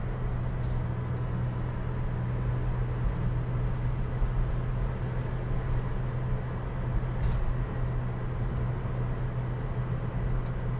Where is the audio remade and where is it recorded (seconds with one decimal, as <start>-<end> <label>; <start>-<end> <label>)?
0.0-10.8 recorded